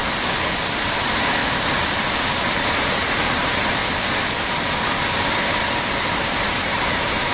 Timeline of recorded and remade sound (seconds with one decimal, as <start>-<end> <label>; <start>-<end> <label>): 0.0-0.9 recorded; 0.9-1.4 remade; 1.4-2.2 recorded; 2.2-3.8 remade; 3.8-6.2 recorded; 6.2-7.3 remade